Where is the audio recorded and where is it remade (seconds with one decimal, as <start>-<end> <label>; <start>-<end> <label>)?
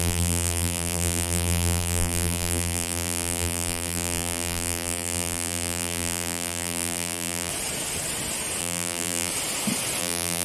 0.0-7.5 remade; 7.5-8.6 recorded; 8.6-9.3 remade; 9.3-10.0 recorded; 10.0-10.4 remade